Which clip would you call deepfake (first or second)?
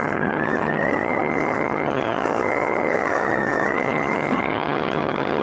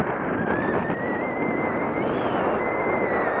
first